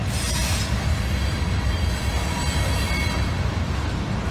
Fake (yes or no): no